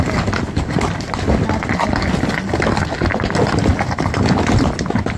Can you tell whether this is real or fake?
real